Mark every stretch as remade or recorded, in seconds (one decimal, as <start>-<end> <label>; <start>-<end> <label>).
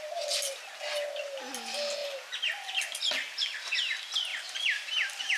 0.0-5.4 recorded